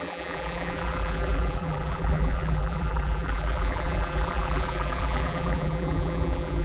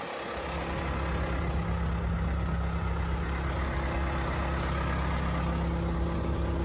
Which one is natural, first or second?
second